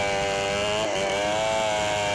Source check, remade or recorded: recorded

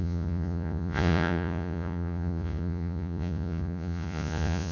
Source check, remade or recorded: remade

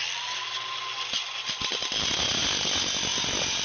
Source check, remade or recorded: recorded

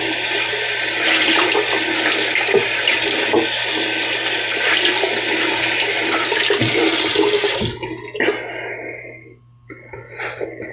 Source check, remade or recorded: recorded